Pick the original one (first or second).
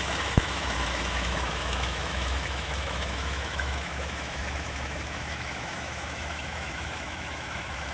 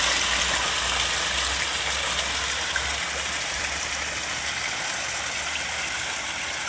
second